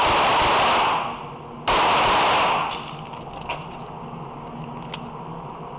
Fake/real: real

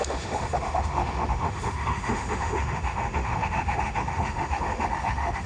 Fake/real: fake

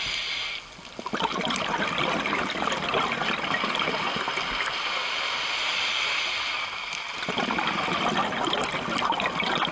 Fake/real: real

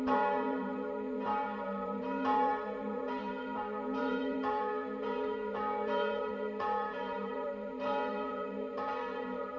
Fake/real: fake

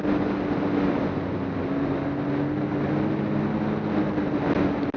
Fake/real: real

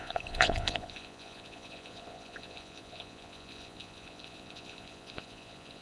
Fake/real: fake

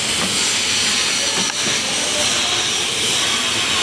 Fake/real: real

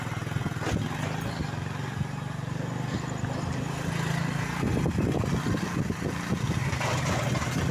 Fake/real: real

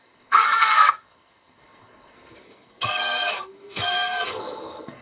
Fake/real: fake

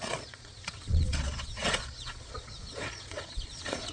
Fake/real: fake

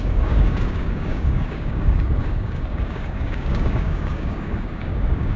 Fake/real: fake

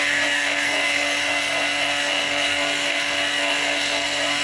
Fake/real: fake